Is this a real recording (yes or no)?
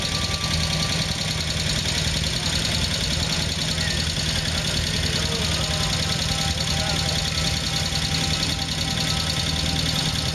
yes